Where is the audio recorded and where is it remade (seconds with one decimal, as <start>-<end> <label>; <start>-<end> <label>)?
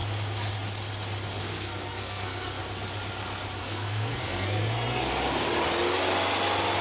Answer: 0.0-1.4 recorded; 1.4-2.6 remade; 2.6-3.6 recorded; 3.6-5.1 remade; 5.1-6.8 recorded